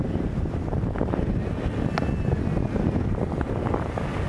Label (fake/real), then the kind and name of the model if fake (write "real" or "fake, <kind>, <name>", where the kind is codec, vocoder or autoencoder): real